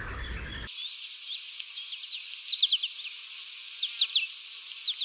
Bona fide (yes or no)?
yes